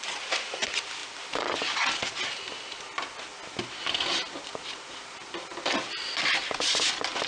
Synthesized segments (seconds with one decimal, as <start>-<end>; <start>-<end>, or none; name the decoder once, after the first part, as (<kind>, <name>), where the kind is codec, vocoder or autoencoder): none